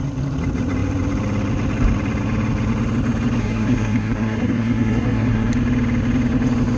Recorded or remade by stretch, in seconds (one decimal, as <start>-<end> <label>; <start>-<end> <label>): 0.0-3.4 recorded; 3.4-5.5 remade; 5.5-6.8 recorded